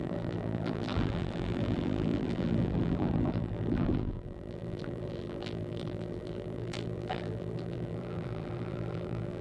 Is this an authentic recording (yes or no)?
no